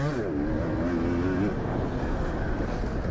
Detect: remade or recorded recorded